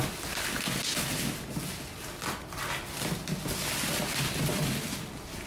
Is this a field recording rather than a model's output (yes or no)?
yes